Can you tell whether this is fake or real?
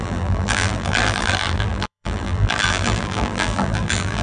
fake